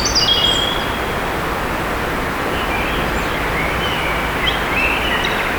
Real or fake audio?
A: real